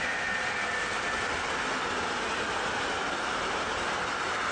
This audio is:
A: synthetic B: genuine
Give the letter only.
B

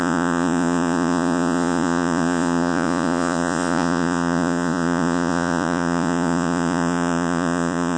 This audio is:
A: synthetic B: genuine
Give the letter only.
A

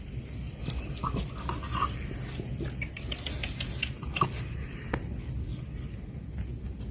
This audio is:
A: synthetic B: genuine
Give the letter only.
B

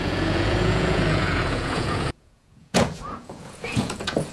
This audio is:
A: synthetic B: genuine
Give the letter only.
A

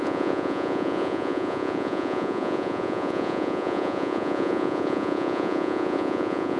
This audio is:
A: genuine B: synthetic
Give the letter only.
B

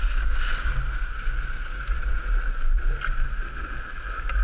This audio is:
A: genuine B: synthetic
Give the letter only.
A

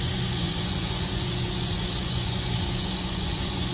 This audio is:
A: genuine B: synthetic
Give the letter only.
B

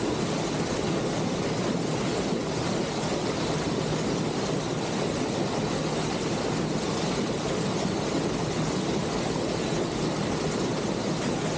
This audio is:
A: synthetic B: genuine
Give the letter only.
B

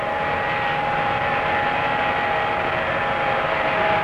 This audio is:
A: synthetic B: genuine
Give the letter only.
B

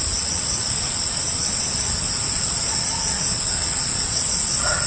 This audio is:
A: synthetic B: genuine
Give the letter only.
A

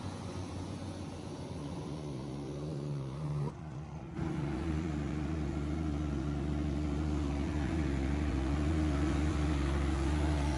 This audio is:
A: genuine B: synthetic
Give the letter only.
B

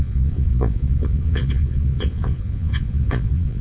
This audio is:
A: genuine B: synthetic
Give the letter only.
B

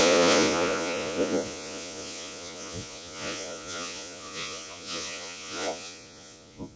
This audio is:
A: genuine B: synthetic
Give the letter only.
B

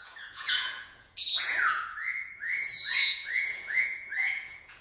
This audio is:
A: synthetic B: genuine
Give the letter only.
A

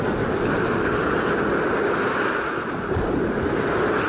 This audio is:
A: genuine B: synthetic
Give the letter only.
A